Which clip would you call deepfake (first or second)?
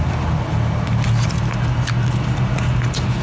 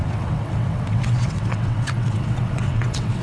second